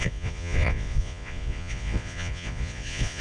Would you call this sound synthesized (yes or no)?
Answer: yes